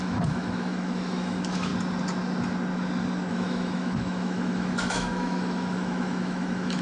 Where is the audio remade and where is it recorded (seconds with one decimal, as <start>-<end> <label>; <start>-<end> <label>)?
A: 0.0-1.7 remade; 1.7-3.3 recorded; 3.3-6.8 remade